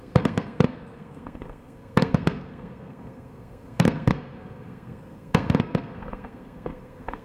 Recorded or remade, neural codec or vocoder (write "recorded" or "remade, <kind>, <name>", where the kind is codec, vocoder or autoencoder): remade, codec, SNAC